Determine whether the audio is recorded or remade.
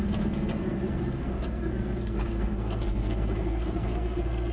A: remade